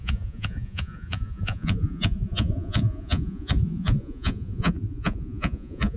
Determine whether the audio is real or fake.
fake